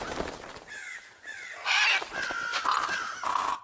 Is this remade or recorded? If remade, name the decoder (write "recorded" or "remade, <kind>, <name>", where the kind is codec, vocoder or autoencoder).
recorded